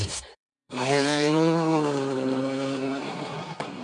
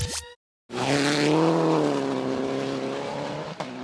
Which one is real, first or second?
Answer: second